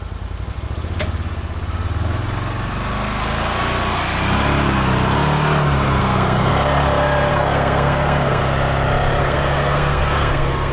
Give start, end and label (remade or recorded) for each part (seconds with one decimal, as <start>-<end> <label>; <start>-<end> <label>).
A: 0.0-6.0 recorded; 6.0-6.5 remade; 6.5-7.3 recorded; 7.3-8.4 remade; 8.4-9.2 recorded; 9.2-10.7 remade